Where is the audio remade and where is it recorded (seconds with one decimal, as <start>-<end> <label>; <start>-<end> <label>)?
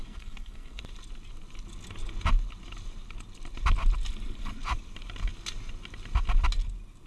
0.0-0.8 remade; 0.8-7.1 recorded